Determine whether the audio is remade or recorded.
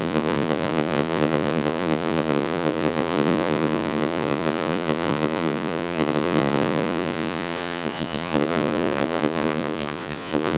remade